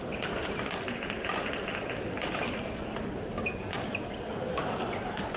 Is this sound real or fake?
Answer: real